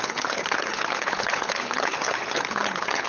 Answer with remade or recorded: remade